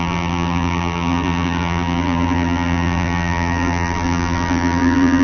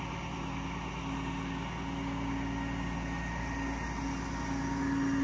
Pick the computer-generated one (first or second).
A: first